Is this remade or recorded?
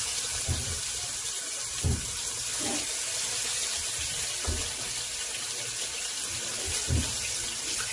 recorded